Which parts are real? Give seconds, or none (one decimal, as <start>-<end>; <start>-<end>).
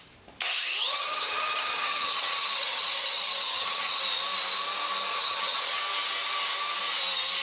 0.0-0.8; 4.0-5.1; 5.8-7.4